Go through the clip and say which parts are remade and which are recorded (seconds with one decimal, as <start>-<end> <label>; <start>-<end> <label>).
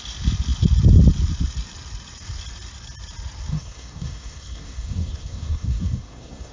0.0-3.5 recorded; 3.5-6.5 remade